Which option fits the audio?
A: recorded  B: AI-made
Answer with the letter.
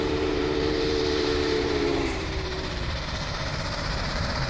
B